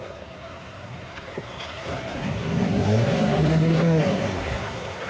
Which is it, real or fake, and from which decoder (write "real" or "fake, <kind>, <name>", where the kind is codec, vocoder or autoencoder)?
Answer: fake, codec, SNAC